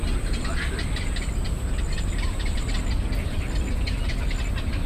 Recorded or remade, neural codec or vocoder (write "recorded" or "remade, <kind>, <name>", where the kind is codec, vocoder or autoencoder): recorded